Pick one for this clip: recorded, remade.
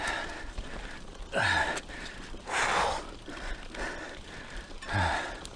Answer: recorded